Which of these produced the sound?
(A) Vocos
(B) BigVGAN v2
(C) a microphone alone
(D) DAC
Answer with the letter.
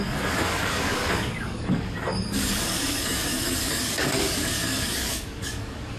D